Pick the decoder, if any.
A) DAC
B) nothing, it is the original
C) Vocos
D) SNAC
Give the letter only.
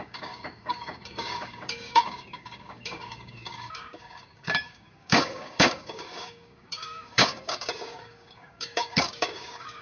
A